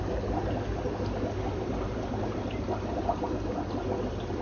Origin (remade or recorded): recorded